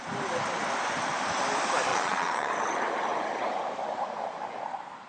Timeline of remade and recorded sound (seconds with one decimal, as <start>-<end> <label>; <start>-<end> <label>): 0.0-1.9 recorded; 1.9-2.5 remade; 2.5-5.1 recorded